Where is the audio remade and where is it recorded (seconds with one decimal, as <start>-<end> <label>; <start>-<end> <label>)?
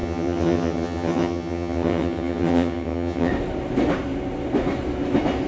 0.0-3.3 remade; 3.3-5.5 recorded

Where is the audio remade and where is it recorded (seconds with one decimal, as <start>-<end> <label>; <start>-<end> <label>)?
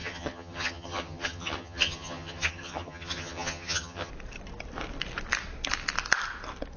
0.0-4.1 remade; 4.1-6.8 recorded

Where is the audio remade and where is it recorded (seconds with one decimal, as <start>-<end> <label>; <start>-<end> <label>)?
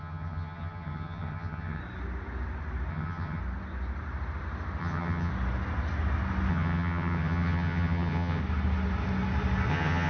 0.0-1.8 remade; 1.8-2.9 recorded; 2.9-3.4 remade; 3.4-4.8 recorded; 4.8-5.3 remade; 5.3-6.5 recorded; 6.5-8.4 remade; 8.4-9.7 recorded; 9.7-10.1 remade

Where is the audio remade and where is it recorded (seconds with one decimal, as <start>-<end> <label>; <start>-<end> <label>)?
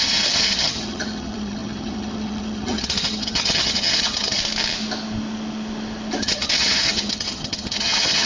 0.0-4.4 remade; 4.4-6.2 recorded; 6.2-8.3 remade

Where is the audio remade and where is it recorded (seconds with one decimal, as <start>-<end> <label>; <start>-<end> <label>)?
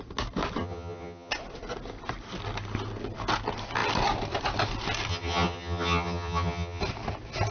0.0-0.6 recorded; 0.6-1.3 remade; 1.3-5.1 recorded; 5.1-6.8 remade; 6.8-7.5 recorded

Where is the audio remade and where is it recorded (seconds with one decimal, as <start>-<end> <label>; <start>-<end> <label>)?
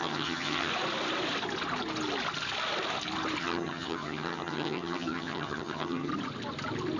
0.0-0.7 remade; 0.7-3.4 recorded; 3.4-6.1 remade; 6.1-7.0 recorded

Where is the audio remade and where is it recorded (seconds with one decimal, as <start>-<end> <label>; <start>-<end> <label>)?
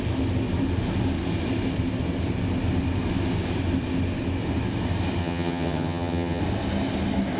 0.0-5.2 recorded; 5.2-6.4 remade; 6.4-7.4 recorded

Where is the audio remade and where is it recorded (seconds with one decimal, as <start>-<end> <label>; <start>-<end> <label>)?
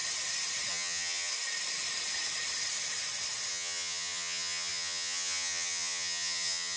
0.0-0.7 recorded; 0.7-1.3 remade; 1.3-3.5 recorded; 3.5-6.8 remade